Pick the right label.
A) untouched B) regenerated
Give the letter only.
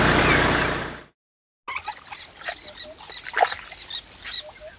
A